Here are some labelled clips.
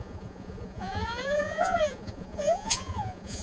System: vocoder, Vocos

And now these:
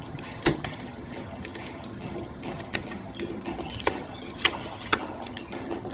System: vocoder, HiFi-GAN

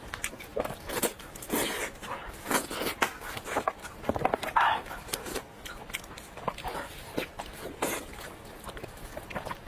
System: none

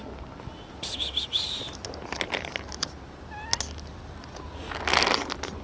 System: none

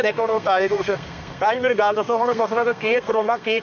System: codec, SNAC